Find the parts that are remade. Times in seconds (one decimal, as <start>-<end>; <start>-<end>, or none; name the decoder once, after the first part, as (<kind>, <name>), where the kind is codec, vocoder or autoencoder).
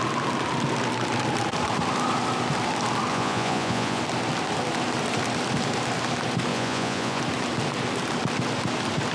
3.1-4.0 (vocoder, Vocos); 6.5-7.2